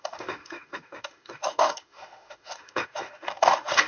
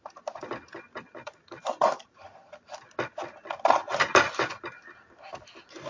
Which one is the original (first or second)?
second